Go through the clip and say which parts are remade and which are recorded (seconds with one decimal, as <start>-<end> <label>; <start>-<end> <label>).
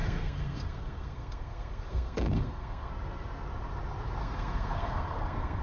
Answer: 0.0-2.9 remade; 2.9-4.2 recorded; 4.2-5.6 remade